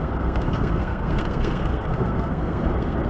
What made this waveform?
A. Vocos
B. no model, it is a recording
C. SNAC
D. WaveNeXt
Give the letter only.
C